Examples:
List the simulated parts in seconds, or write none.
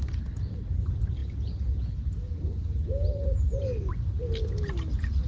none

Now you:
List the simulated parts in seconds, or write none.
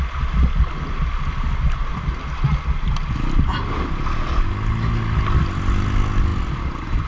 none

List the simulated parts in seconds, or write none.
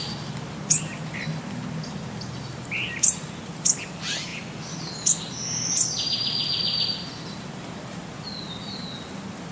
none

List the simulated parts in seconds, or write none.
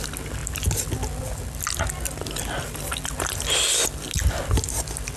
none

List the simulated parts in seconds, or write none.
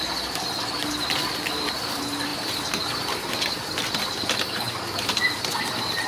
none